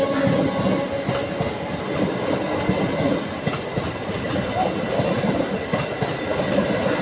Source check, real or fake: real